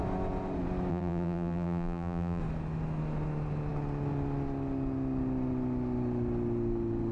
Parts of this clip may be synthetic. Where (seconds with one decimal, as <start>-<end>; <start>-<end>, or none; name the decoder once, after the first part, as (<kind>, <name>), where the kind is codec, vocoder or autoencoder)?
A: 0.9-2.4 (vocoder, BigVGAN v2)